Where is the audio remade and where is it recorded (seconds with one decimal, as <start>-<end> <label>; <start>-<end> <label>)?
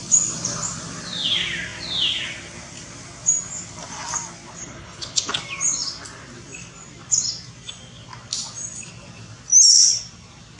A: 0.0-4.6 recorded; 4.6-5.3 remade; 5.3-10.6 recorded